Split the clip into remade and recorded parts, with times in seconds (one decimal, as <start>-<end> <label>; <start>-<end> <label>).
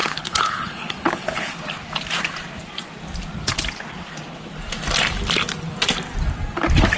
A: 0.0-1.5 remade; 1.5-7.0 recorded